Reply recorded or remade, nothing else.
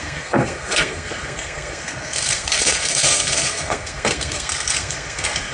remade